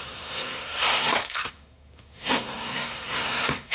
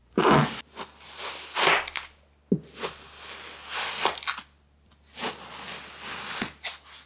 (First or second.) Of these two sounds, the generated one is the first